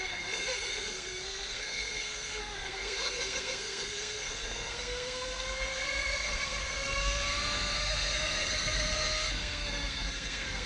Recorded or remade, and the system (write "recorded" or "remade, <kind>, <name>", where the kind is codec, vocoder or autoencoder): remade, codec, SNAC